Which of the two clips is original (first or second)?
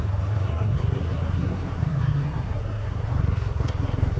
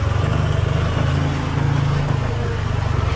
second